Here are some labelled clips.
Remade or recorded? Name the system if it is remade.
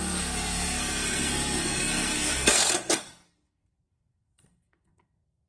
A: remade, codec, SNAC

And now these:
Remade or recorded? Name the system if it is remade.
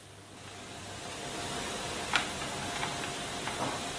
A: recorded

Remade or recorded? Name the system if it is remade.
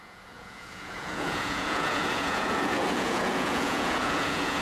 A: remade, vocoder, Vocos